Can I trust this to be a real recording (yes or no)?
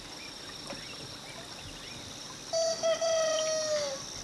yes